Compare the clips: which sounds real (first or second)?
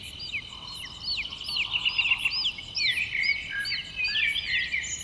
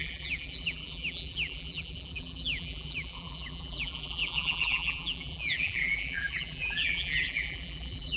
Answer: first